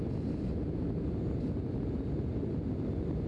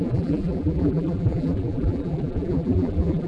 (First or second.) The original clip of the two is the first